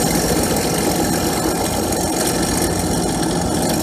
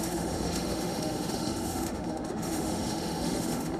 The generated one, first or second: second